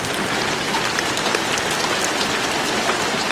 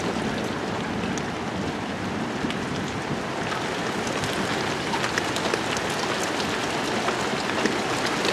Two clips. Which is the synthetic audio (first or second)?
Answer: first